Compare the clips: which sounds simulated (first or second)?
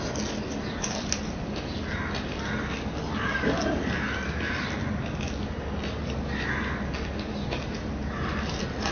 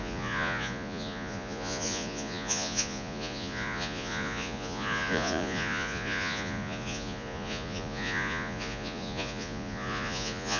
second